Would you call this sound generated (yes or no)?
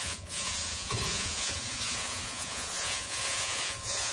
yes